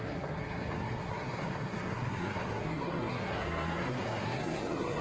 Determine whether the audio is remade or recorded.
remade